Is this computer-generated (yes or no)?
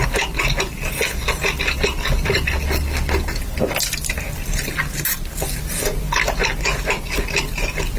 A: no